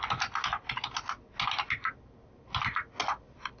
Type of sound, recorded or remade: recorded